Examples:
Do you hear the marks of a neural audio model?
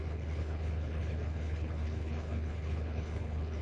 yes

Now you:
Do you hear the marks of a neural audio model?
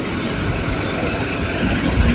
no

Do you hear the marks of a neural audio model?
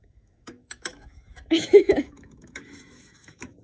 yes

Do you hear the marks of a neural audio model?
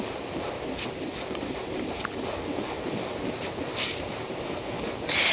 no